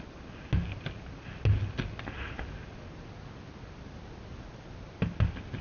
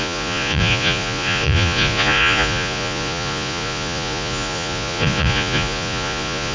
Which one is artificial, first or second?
second